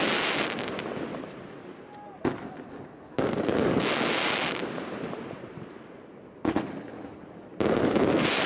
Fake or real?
real